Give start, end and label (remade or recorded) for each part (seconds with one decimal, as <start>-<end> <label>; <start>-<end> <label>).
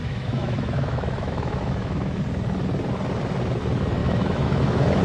0.0-2.2 remade; 2.2-4.0 recorded; 4.0-5.0 remade